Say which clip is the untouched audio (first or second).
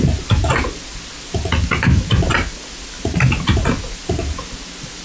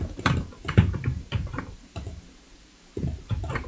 first